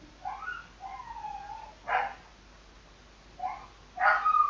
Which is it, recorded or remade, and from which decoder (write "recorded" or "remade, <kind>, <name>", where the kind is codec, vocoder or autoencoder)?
recorded